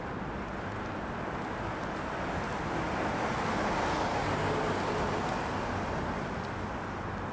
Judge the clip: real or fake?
real